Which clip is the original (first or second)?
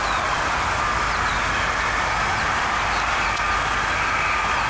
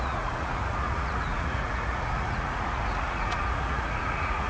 first